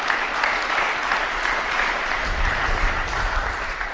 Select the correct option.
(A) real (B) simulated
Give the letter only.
A